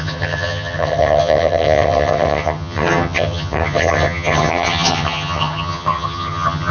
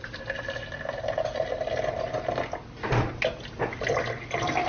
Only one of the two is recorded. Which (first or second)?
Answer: second